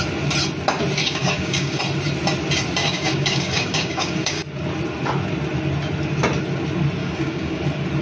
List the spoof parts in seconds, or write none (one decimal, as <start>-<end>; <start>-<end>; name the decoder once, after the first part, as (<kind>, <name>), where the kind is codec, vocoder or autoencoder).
1.0-1.8 (codec, DAC); 2.8-4.4; 7.0-7.6

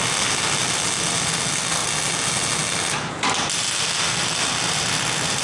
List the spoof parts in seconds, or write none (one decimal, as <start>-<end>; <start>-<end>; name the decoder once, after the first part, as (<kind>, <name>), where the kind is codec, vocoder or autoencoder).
none

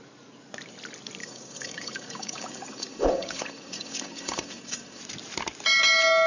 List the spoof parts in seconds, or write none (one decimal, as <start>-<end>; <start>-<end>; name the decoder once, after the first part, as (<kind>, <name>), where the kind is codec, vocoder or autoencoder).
1.2-5.0 (codec, DAC)

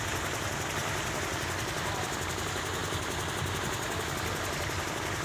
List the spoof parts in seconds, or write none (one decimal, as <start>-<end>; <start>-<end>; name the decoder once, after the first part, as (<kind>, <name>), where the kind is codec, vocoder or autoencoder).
none

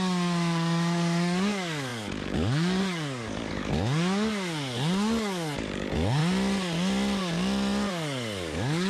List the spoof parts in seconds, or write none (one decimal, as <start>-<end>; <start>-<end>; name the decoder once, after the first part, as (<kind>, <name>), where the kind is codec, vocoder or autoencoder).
0.0-6.2 (codec, DAC); 7.9-8.9

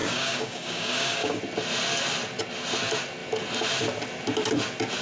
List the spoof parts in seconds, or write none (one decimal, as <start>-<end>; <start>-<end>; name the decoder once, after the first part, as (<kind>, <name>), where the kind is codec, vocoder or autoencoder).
0.0-1.4 (codec, DAC)

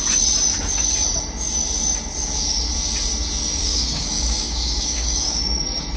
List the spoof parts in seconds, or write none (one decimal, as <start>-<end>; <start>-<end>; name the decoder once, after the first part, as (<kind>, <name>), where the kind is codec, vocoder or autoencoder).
3.6-5.4 (codec, DAC)

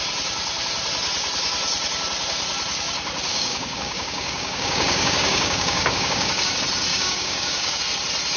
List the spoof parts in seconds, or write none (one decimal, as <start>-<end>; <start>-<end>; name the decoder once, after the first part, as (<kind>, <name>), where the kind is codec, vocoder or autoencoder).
3.3-6.5 (codec, DAC); 6.9-7.8